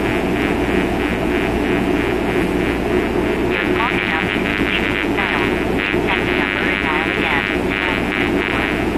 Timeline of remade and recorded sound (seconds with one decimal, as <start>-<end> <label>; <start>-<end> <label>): 0.0-9.0 recorded